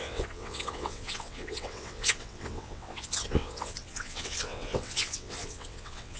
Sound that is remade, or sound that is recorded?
remade